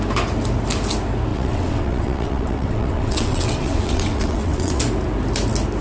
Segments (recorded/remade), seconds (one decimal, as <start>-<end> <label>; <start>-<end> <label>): 0.0-1.3 recorded; 1.3-4.8 remade; 4.8-5.8 recorded